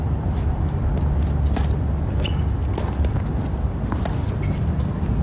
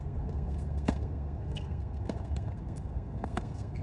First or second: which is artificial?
second